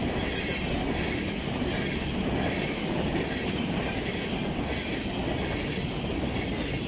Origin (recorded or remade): recorded